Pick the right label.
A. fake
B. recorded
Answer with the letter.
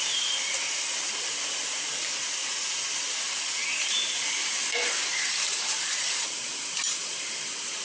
A